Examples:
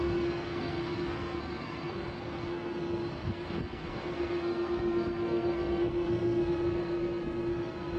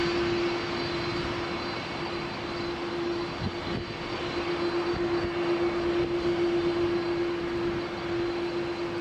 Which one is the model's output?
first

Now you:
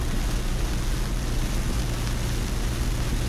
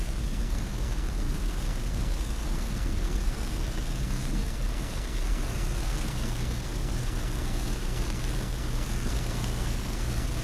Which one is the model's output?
second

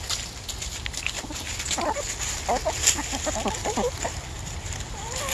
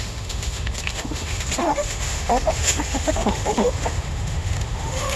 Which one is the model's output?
second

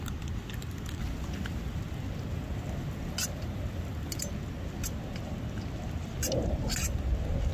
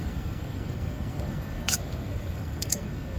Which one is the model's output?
second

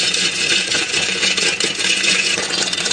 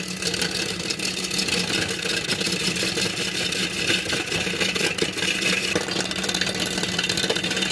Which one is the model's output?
first